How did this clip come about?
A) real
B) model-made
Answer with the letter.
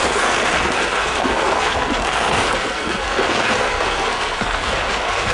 B